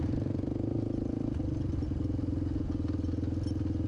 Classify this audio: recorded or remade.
recorded